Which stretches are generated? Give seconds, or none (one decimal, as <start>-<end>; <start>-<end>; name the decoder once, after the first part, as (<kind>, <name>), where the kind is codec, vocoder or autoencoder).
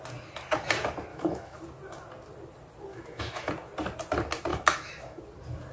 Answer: 1.1-1.6 (autoencoder, DAC-VAE); 2.9-3.5; 4.5-5.2